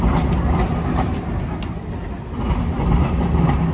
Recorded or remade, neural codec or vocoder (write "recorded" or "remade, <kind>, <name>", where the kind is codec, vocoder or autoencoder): recorded